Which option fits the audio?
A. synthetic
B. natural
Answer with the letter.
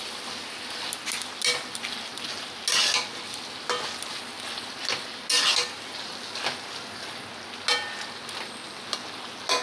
B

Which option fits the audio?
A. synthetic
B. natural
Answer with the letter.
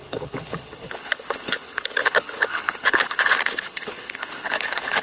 A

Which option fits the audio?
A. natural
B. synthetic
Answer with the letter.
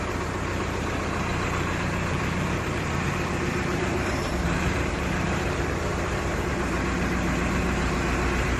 B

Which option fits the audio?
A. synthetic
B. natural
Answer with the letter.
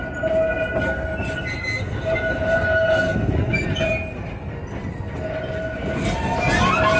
B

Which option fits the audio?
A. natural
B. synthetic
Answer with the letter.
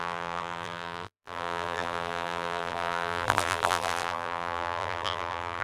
B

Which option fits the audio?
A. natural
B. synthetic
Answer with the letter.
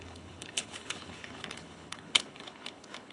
B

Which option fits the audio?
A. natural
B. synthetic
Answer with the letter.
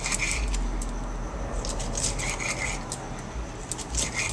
A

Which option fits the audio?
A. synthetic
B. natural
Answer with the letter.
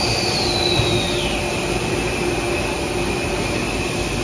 B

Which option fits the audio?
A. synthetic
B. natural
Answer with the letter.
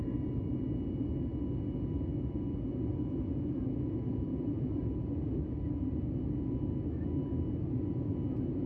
B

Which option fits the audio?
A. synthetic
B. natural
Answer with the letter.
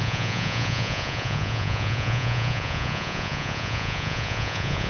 A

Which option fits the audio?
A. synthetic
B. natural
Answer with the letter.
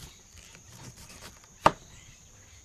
A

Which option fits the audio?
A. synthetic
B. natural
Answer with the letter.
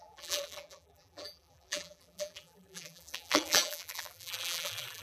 A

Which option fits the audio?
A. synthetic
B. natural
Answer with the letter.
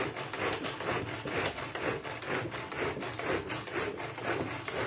B